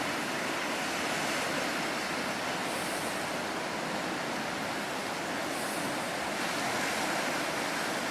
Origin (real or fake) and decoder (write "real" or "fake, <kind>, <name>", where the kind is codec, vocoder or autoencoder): real